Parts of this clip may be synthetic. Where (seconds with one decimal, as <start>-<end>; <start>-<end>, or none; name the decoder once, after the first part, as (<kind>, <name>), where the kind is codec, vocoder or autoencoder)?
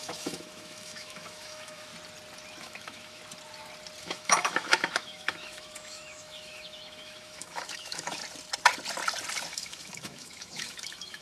0.0-1.9 (autoencoder, DAC-VAE); 2.6-3.2; 4.0-8.2; 9.5-11.2